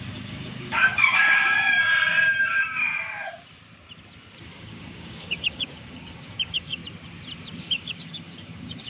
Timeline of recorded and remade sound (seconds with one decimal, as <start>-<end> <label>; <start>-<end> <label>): 0.0-1.9 remade; 1.9-2.4 recorded; 2.4-2.9 remade; 2.9-4.4 recorded; 4.4-6.8 remade; 6.8-7.6 recorded; 7.6-8.9 remade

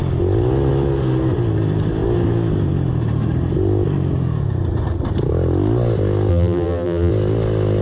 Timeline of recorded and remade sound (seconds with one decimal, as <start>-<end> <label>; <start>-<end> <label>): 0.0-6.3 recorded; 6.3-7.1 remade; 7.1-7.8 recorded